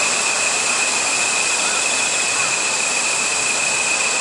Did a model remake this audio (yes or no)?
no